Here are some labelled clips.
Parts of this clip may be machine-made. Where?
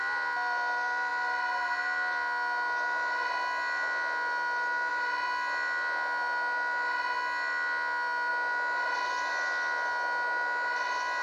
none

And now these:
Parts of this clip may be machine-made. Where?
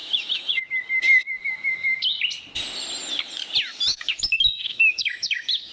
0.0-0.7; 3.9-5.7